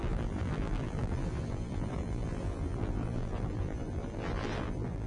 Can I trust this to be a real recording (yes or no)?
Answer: no